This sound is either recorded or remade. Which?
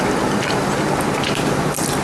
recorded